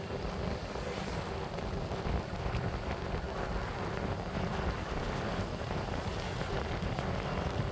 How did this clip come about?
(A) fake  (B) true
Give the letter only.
B